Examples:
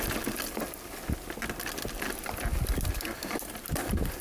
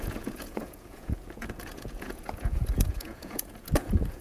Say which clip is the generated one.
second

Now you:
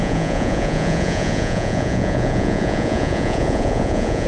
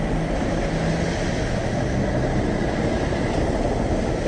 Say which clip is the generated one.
first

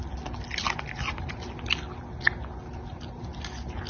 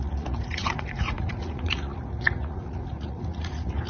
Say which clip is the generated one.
second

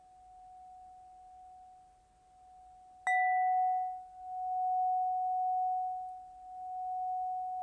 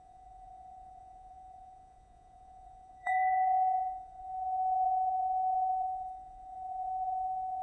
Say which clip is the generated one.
second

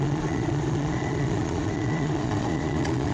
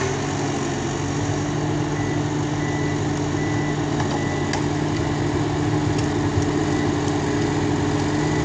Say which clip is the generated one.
first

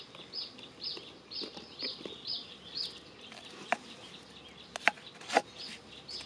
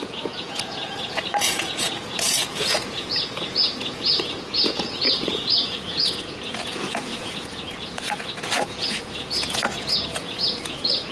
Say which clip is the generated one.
second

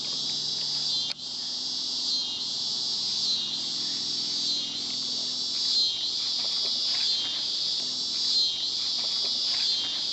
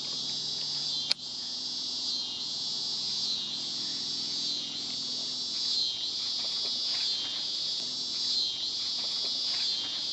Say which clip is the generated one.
second